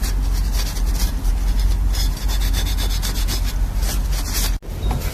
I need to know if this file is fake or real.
real